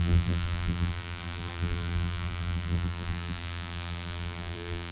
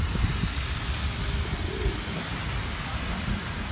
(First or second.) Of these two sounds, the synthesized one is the first